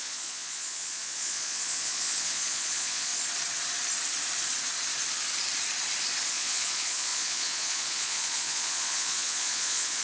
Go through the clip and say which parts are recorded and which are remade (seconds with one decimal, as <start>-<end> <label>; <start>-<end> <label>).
0.0-3.1 remade; 3.1-6.3 recorded; 6.3-10.0 remade